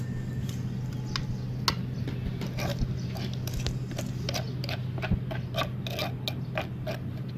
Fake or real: real